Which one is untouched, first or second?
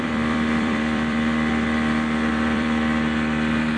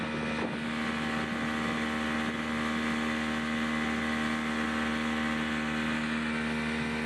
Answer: second